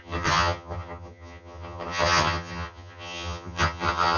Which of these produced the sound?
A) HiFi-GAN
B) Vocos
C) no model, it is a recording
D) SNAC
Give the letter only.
A